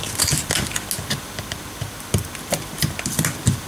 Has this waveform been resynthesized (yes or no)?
no